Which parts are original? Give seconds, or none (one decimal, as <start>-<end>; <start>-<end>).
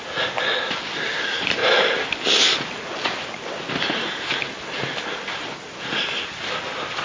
0.0-7.0